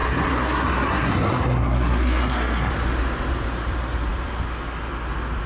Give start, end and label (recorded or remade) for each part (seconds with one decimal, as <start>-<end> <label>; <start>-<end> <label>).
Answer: 0.0-2.7 remade; 2.7-5.5 recorded